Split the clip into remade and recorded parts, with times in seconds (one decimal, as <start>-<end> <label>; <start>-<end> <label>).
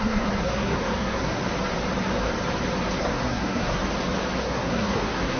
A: 0.0-1.4 remade; 1.4-3.0 recorded; 3.0-3.8 remade; 3.8-4.4 recorded; 4.4-5.4 remade